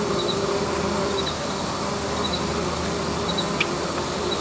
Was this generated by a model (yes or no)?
no